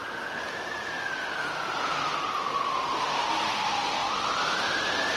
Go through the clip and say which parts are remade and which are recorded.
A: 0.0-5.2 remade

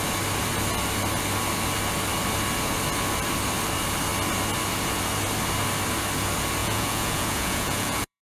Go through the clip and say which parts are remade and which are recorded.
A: 0.0-6.6 recorded; 6.6-8.2 remade